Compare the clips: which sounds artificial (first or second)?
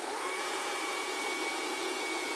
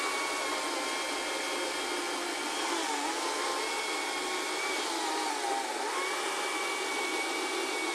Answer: first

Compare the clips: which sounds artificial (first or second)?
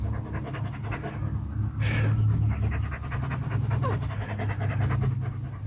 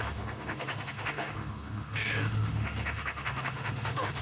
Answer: second